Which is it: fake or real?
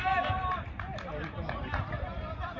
real